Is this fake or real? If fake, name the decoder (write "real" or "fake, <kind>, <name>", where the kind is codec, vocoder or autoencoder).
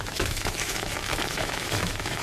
fake, autoencoder, DAC-VAE